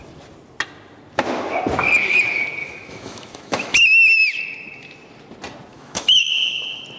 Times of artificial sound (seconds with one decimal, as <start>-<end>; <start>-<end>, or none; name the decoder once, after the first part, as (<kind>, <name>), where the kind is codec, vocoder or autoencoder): 2.6-4.2 (autoencoder, DAC-VAE); 5.7-6.3

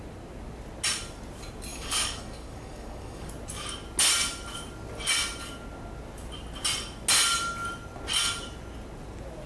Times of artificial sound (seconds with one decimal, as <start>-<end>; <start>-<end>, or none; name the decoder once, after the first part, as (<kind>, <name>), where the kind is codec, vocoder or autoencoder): 1.7-3.3 (codec, DAC)

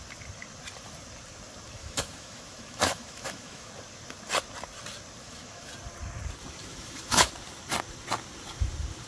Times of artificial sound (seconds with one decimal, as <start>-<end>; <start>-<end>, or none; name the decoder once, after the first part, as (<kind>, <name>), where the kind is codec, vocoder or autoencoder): 1.8-3.7 (autoencoder, DAC-VAE); 5.2-5.7; 6.6-7.3